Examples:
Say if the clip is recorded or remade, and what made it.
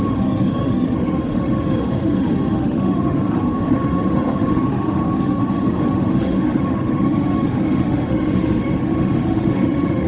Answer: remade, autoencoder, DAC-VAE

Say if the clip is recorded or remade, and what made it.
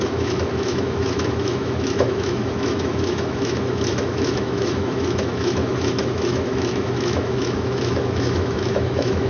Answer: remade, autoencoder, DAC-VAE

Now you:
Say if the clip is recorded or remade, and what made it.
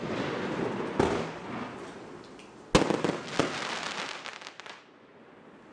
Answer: recorded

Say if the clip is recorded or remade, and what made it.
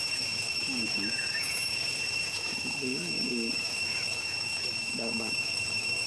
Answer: remade, autoencoder, DAC-VAE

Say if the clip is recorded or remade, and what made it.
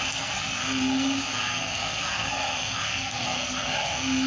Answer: remade, codec, SNAC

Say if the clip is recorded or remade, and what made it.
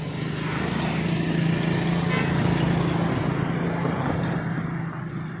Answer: recorded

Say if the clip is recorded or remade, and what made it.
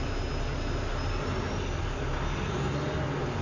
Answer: recorded